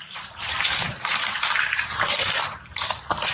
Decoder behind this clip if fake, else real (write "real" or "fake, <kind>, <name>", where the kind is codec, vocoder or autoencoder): fake, vocoder, BigVGAN v2